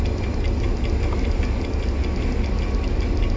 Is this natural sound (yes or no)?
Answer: yes